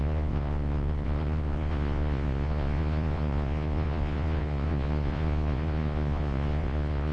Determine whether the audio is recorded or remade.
remade